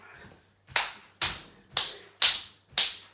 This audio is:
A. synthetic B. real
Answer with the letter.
B